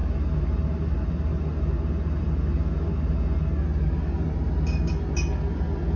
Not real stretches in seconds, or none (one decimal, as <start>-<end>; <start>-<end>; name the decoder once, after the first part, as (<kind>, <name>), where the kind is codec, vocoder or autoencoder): none